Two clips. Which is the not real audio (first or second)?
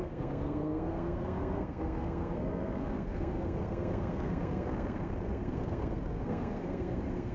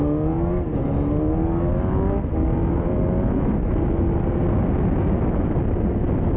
first